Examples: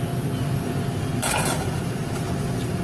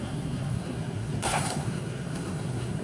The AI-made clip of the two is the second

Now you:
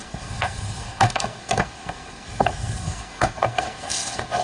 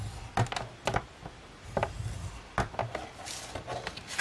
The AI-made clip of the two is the first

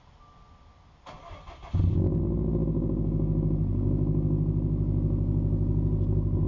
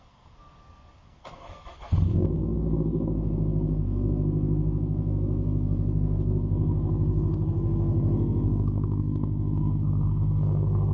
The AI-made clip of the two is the second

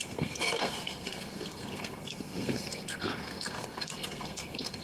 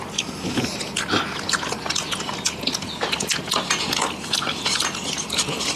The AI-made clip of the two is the first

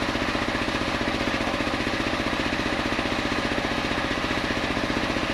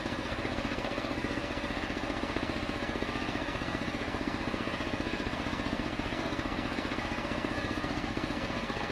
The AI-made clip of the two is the second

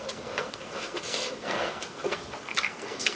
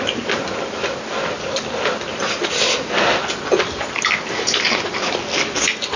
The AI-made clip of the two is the first